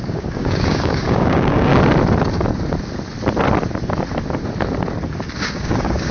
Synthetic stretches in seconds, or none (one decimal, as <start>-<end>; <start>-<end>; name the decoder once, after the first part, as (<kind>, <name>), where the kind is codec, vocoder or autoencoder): 0.0-1.7 (codec, DAC); 5.4-6.1